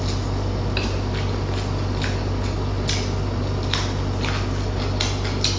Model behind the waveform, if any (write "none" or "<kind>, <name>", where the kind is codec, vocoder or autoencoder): none